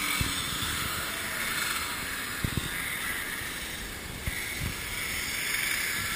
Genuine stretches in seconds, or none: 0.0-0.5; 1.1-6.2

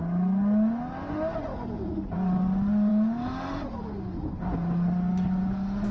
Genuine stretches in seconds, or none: 0.0-5.9

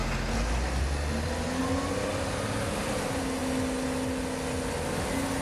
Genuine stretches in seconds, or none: 0.0-5.4

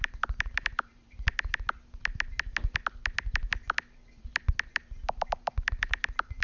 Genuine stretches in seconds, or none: 1.3-4.7

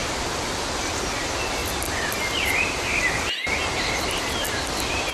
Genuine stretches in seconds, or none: 0.0-5.1